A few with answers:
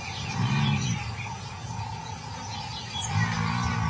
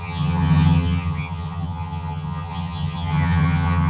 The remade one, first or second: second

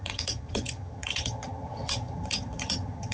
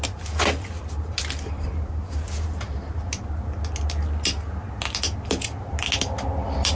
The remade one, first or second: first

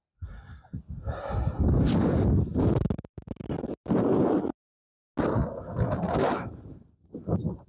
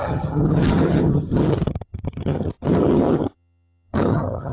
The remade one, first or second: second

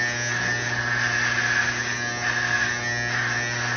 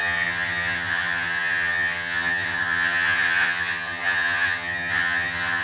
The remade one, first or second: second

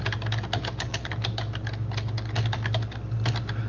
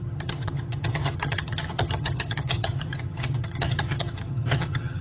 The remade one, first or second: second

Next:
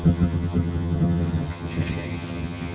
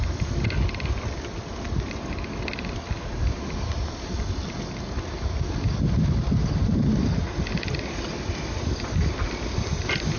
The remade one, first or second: first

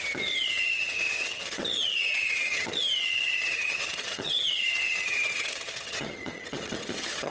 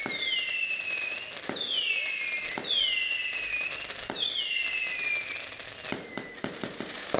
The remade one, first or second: first